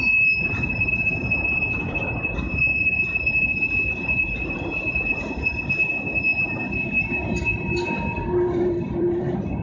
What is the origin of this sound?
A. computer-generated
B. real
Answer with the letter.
A